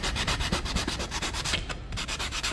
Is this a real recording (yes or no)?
no